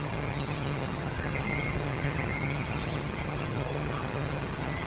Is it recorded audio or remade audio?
remade